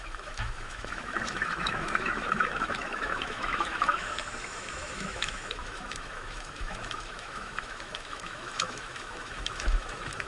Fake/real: fake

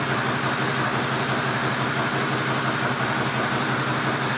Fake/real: real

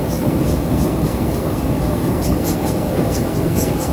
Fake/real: fake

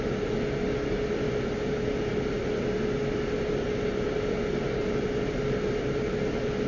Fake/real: real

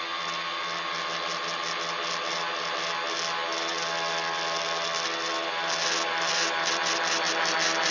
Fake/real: real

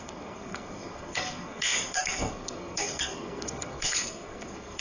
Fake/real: fake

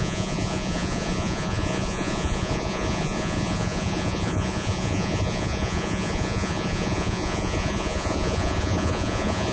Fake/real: fake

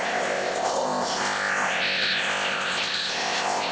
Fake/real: fake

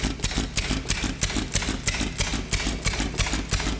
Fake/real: real